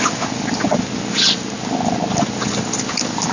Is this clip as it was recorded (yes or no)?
yes